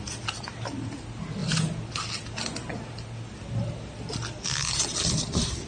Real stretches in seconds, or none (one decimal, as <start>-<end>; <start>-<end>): 0.0-5.7